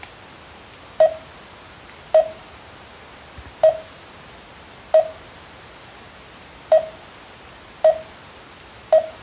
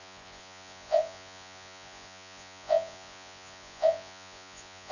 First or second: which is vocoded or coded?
second